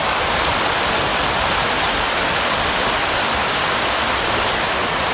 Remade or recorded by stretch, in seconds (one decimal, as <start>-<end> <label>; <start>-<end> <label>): 0.0-5.1 recorded